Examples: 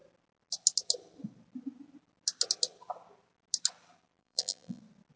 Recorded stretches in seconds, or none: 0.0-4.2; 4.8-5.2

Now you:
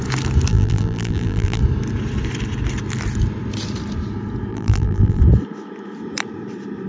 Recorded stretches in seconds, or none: 0.0-0.5; 1.6-4.5; 5.2-6.9

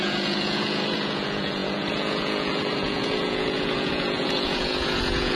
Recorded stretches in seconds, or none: none

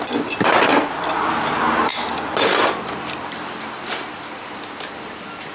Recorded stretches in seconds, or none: 0.0-0.7; 1.3-5.5

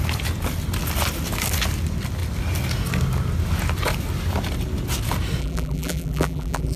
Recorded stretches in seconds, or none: 0.0-5.4

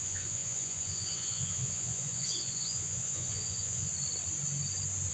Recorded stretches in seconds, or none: 3.9-5.1

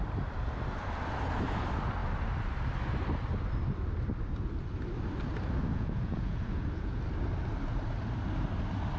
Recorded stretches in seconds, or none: 0.0-5.7; 7.0-9.0